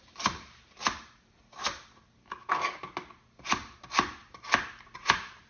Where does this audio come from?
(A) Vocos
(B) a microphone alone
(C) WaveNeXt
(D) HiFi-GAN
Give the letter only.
B